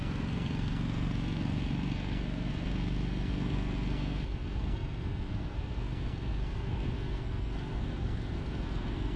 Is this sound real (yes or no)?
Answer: no